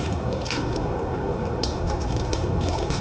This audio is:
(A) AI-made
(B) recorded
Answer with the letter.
A